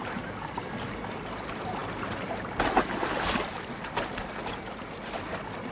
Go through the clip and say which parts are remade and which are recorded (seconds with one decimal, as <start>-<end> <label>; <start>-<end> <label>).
0.0-5.7 recorded